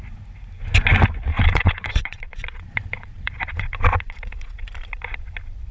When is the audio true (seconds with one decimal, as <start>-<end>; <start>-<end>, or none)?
0.0-1.3; 4.7-5.7